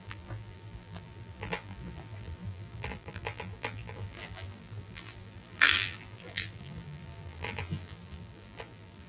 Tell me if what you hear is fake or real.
fake